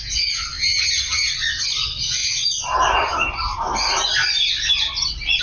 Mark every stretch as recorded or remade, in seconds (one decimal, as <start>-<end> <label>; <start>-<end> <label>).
0.0-0.7 recorded; 0.7-1.3 remade; 1.3-5.4 recorded